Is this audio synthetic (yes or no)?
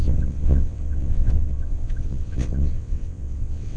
yes